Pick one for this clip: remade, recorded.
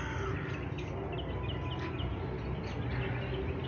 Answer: recorded